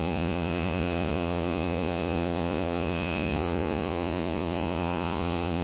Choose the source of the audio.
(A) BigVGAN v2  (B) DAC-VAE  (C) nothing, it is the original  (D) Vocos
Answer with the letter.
D